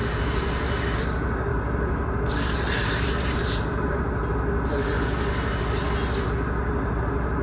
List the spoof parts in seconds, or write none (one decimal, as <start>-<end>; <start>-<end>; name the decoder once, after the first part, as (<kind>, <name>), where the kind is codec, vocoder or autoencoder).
0.0-1.0 (vocoder, BigVGAN v2); 1.5-2.3; 2.8-4.0